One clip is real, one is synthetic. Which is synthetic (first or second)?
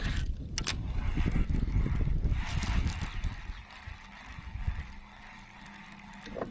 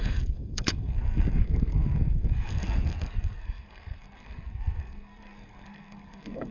second